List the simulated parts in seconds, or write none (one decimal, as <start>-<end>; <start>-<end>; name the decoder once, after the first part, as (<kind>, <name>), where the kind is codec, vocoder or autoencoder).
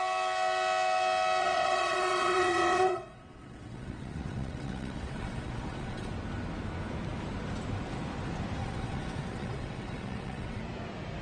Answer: 1.4-6.1 (vocoder, WaveNeXt); 8.6-10.6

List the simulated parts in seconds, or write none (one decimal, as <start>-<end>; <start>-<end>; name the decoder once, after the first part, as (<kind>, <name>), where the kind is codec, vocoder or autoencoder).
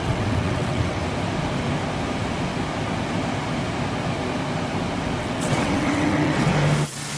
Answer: 0.0-1.0 (vocoder, WaveNeXt); 5.2-6.5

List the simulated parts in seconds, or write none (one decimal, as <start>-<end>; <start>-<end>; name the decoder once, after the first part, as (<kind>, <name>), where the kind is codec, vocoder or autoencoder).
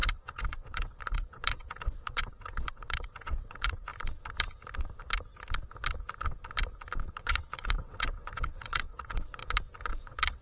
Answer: 0.0-3.9 (vocoder, WaveNeXt); 7.2-9.4; 9.9-10.4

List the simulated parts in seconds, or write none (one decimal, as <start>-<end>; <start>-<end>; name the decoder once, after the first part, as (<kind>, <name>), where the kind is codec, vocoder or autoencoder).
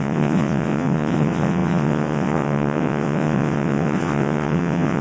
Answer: 0.0-5.0 (vocoder, WaveNeXt)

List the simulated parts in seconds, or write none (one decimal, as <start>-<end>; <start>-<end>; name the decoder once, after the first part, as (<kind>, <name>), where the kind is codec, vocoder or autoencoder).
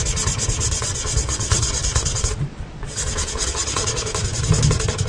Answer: 0.8-3.9 (vocoder, WaveNeXt)